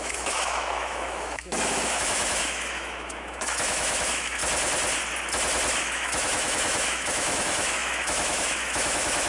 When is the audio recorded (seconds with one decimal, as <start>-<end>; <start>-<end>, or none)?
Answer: 4.4-5.8